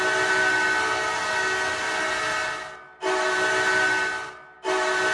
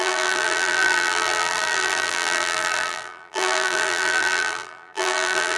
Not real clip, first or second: second